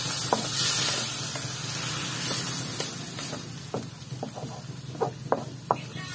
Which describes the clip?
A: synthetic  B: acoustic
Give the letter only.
B